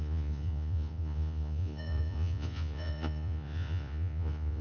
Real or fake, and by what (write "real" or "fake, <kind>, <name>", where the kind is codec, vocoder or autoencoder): fake, vocoder, Vocos